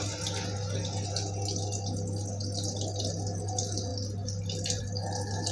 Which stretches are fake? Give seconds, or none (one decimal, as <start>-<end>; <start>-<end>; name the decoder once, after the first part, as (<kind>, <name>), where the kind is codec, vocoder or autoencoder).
none